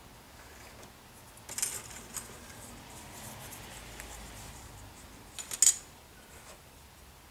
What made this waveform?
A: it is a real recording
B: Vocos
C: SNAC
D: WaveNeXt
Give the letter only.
A